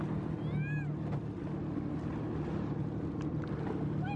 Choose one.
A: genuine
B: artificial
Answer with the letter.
A